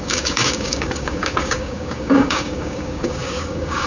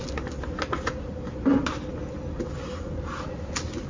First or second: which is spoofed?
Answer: first